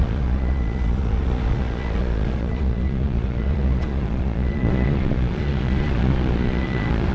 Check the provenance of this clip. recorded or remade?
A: remade